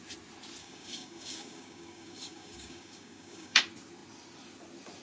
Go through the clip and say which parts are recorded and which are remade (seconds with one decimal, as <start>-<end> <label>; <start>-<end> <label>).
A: 0.0-0.6 recorded; 0.6-3.6 remade; 3.6-5.0 recorded